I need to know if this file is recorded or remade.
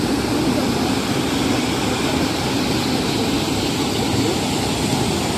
recorded